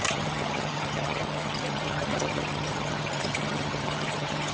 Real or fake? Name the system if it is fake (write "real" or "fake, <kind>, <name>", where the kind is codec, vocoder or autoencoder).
fake, vocoder, HiFi-GAN